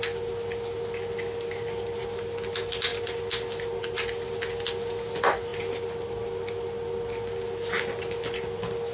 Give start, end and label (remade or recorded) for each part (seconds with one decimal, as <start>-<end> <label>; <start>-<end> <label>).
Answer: 0.0-8.9 recorded